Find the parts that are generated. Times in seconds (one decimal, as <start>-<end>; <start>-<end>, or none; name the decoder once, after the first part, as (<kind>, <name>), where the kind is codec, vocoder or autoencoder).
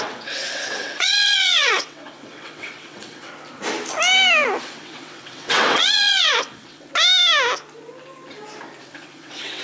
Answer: 0.0-3.3 (vocoder, WaveNeXt); 4.6-6.9; 8.8-9.6